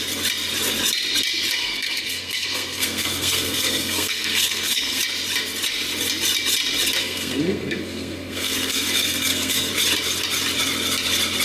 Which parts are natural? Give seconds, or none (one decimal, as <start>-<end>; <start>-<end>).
0.0-1.6; 5.0-7.0; 9.7-11.4